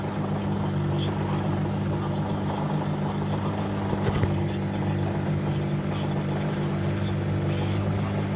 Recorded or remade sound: recorded